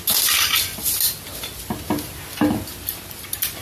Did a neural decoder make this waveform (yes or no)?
no